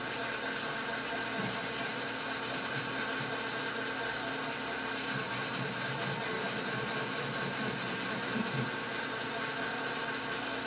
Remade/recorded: recorded